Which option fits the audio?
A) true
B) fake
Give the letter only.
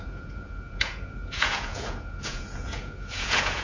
B